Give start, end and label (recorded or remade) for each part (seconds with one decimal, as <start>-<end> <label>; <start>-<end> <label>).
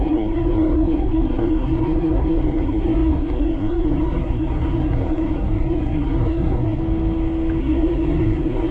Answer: 0.0-6.8 remade; 6.8-7.6 recorded; 7.6-8.7 remade